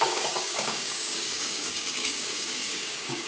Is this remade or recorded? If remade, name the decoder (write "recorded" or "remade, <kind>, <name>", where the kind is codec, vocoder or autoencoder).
remade, codec, DAC